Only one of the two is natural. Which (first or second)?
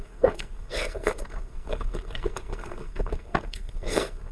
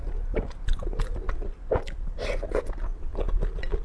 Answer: second